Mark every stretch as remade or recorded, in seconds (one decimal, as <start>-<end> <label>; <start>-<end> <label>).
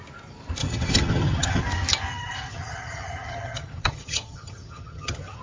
0.0-0.6 recorded; 0.6-1.6 remade; 1.6-2.1 recorded; 2.1-5.4 remade